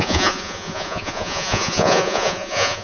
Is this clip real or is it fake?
fake